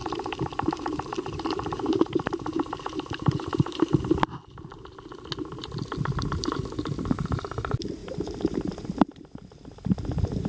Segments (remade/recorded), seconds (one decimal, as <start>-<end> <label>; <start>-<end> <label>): 0.0-4.0 remade; 4.0-8.0 recorded; 8.0-8.7 remade; 8.7-10.5 recorded